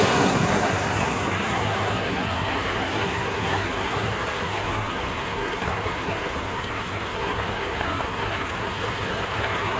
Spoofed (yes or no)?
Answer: yes